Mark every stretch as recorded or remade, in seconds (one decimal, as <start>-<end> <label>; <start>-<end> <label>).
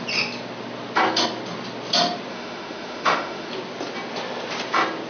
0.0-2.3 recorded; 2.3-3.5 remade; 3.5-5.1 recorded